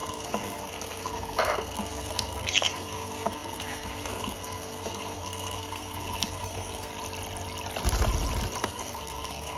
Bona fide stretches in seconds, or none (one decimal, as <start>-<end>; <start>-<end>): 6.9-8.6